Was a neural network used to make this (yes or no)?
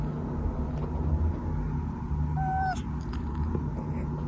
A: no